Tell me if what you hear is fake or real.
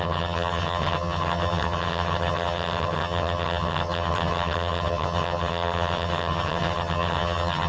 fake